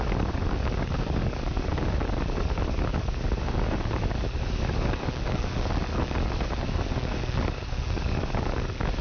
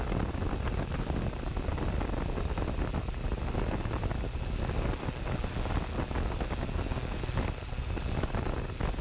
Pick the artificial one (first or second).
first